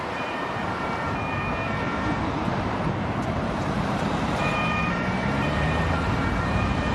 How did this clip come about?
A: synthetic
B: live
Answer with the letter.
A